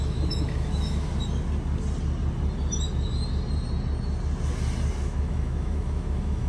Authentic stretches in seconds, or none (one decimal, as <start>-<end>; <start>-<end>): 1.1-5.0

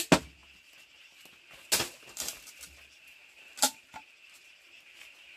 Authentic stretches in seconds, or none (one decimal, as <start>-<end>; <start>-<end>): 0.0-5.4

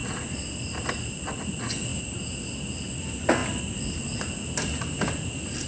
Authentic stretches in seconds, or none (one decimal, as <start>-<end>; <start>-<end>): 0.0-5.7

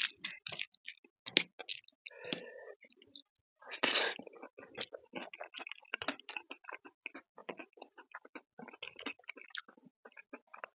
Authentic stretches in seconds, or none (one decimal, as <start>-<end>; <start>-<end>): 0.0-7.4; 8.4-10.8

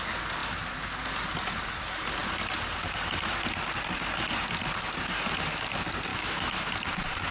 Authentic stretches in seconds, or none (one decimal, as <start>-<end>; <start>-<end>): 0.0-6.1; 6.7-7.3